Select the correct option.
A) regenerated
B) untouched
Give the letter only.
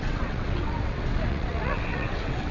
A